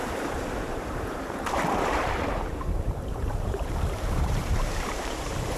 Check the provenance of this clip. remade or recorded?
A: remade